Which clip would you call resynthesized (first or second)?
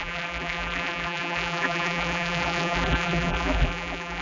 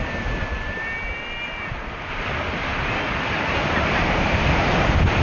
first